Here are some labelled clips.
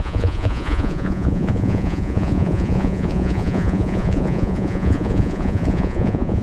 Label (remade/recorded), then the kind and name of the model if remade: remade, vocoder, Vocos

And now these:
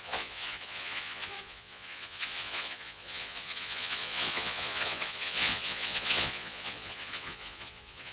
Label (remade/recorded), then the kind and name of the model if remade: remade, vocoder, Vocos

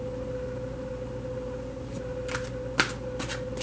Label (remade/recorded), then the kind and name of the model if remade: recorded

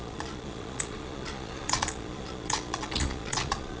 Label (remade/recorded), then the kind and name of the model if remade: remade, vocoder, Vocos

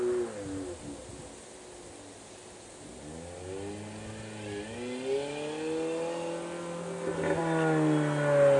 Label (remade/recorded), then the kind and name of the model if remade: recorded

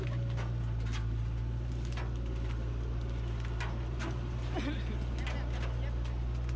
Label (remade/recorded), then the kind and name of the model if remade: recorded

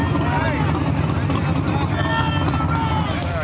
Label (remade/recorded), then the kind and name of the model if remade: recorded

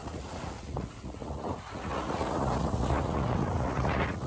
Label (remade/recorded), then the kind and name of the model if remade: remade, vocoder, Vocos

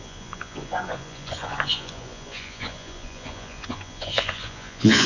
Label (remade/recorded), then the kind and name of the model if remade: remade, vocoder, Vocos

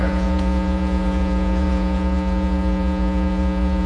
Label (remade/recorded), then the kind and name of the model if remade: remade, vocoder, Vocos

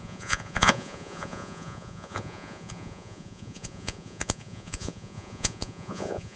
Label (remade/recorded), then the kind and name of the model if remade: remade, vocoder, Vocos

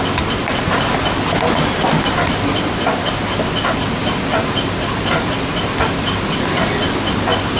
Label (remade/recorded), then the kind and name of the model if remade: recorded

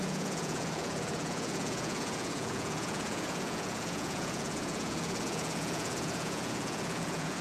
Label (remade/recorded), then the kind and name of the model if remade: remade, vocoder, Vocos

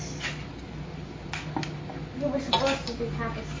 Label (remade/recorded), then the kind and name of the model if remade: recorded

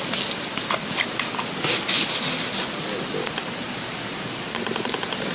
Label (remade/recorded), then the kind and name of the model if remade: recorded